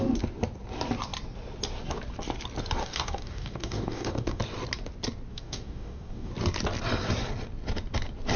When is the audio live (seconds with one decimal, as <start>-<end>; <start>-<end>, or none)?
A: 0.0-2.8; 4.4-5.3; 6.3-8.4